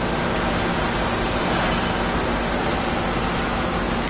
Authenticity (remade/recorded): recorded